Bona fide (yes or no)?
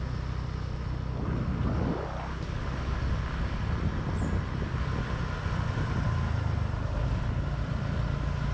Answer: yes